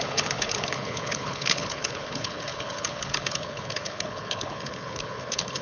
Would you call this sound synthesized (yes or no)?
yes